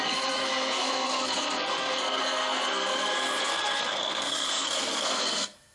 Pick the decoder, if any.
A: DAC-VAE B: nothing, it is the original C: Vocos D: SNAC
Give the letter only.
D